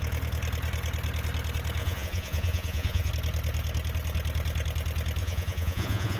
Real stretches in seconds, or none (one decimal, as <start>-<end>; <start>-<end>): 0.0-1.8; 3.1-5.2